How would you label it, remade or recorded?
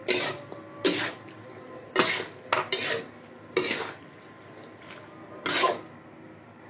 recorded